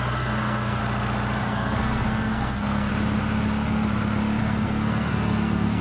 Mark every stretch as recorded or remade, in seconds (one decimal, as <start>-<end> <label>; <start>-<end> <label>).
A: 0.0-0.8 remade; 0.8-1.4 recorded; 1.4-2.9 remade; 2.9-4.4 recorded; 4.4-5.8 remade